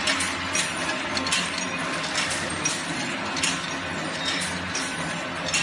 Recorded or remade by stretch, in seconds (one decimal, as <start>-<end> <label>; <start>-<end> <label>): 0.0-5.6 recorded

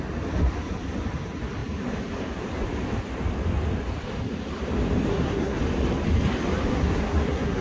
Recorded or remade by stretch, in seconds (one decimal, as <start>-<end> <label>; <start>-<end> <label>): 0.0-5.1 recorded; 5.1-5.6 remade; 5.6-6.7 recorded; 6.7-7.6 remade

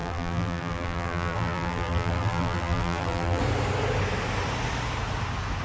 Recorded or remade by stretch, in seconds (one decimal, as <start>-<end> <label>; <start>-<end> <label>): 0.0-3.4 remade; 3.4-5.6 recorded

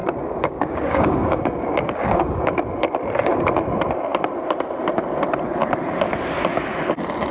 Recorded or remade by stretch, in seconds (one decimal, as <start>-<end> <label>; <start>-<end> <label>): 0.0-2.6 remade; 2.6-7.3 recorded

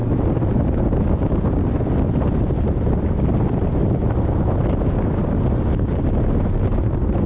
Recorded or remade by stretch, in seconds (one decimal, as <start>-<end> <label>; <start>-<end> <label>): 0.0-1.0 recorded; 1.0-1.6 remade; 1.6-4.8 recorded; 4.8-5.2 remade; 5.2-7.3 recorded

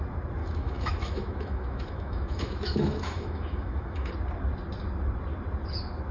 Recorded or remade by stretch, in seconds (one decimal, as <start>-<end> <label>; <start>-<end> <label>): 0.0-0.4 recorded; 0.4-4.1 remade; 4.1-6.1 recorded

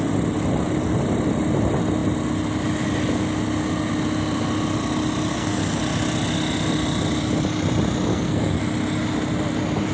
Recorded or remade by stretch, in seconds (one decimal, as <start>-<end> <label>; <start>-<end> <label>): 0.0-5.3 recorded; 5.3-5.8 remade; 5.8-8.1 recorded; 8.1-8.6 remade; 8.6-9.9 recorded

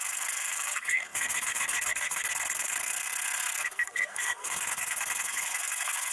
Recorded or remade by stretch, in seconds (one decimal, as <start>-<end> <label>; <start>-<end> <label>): 0.0-6.1 remade